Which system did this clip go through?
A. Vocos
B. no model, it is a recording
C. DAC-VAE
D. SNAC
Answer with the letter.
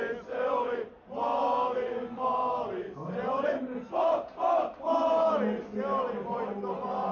B